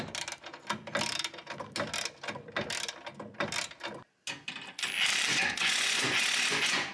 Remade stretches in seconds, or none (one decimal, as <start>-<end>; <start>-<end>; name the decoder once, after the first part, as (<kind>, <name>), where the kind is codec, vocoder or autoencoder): 5.3-6.9 (vocoder, Vocos)